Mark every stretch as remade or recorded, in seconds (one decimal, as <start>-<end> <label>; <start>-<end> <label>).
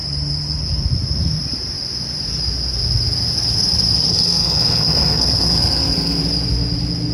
0.0-4.1 recorded; 4.1-6.2 remade; 6.2-7.1 recorded